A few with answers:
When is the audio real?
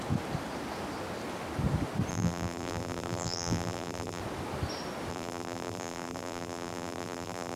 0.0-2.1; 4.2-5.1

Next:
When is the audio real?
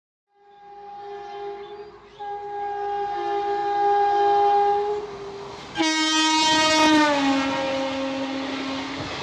0.0-9.2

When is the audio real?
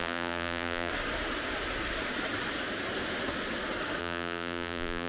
0.9-4.0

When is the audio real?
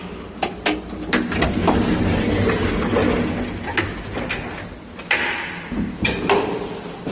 0.0-7.1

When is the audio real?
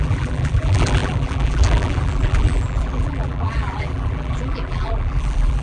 none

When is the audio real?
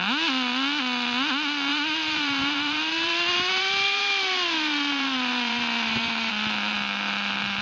0.0-1.7; 6.3-7.6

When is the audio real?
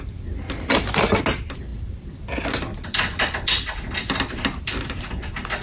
0.0-5.6